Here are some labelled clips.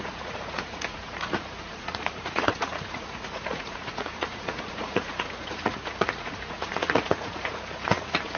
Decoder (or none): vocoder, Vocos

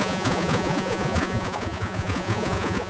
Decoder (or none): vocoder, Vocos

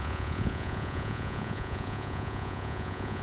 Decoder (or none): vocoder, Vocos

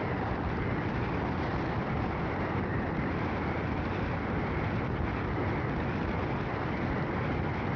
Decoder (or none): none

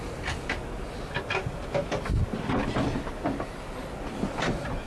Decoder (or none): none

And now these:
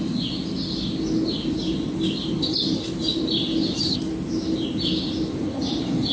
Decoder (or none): none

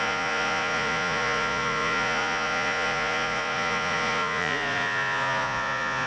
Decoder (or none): vocoder, Vocos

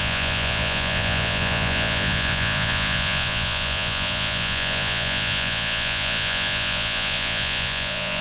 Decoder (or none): vocoder, Vocos